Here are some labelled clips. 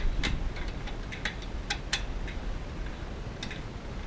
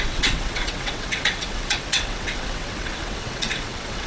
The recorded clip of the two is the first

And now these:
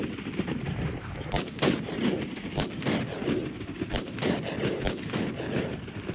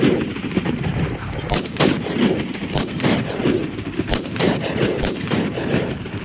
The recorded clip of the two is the first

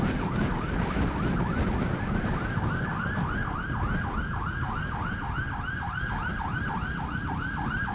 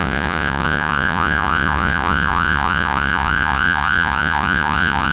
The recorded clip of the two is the first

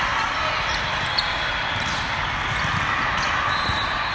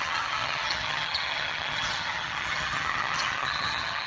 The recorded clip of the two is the first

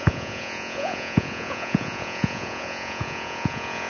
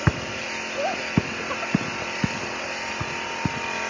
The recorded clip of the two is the second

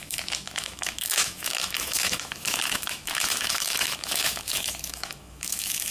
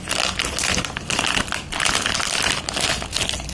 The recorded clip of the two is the second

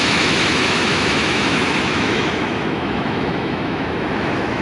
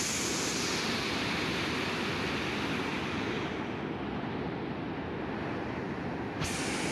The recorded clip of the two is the second